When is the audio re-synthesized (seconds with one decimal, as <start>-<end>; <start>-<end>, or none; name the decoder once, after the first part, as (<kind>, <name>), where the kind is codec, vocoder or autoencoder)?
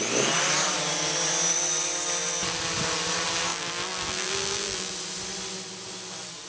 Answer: 3.5-4.9 (vocoder, BigVGAN v2)